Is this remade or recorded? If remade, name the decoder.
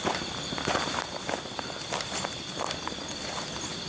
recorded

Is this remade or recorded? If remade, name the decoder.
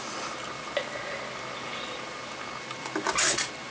recorded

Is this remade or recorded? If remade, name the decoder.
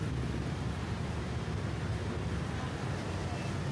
recorded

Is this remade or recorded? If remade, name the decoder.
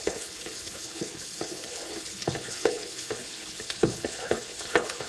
remade, codec, HILCodec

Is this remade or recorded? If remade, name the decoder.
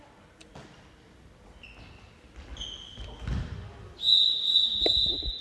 recorded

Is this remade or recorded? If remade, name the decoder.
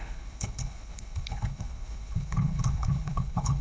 remade, codec, HILCodec